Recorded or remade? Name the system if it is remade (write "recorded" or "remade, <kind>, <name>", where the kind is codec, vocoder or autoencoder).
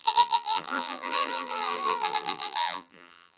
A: remade, vocoder, BigVGAN v2